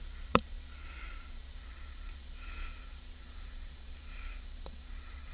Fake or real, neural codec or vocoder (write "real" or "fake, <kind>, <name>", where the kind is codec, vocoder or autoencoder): fake, vocoder, Vocos